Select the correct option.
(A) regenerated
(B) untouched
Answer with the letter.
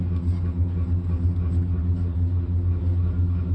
B